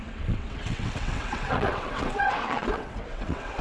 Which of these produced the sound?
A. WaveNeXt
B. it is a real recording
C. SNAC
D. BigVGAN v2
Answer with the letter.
A